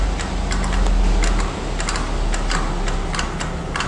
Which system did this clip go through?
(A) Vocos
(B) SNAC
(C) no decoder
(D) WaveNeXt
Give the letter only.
C